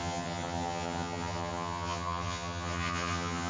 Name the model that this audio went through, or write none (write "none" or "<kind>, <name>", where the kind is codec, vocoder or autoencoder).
vocoder, HiFi-GAN